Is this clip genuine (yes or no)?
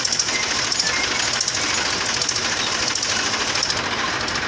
yes